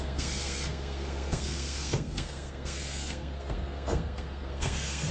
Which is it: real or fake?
fake